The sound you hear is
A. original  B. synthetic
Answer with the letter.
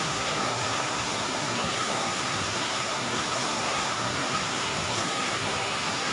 B